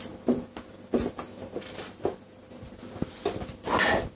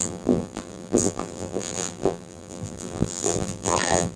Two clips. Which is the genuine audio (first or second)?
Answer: first